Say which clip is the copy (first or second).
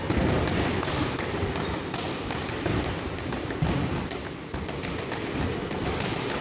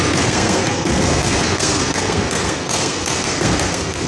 second